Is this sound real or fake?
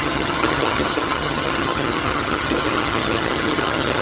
fake